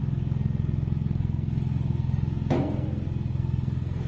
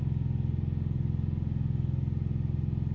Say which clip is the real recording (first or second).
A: second